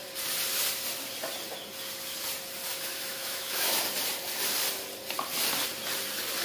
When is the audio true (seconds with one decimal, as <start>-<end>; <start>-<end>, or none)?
0.0-2.7; 3.8-6.4